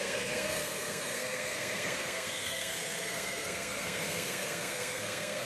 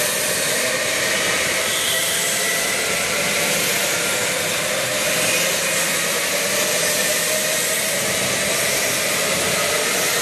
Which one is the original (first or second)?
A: second